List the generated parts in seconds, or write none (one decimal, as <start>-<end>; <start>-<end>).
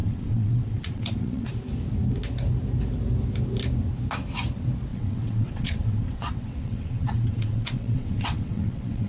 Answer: 0.0-1.5; 4.9-9.1